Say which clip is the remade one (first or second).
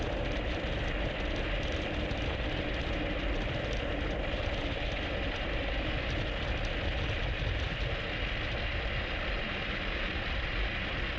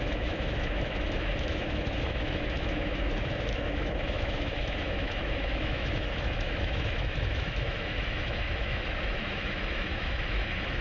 second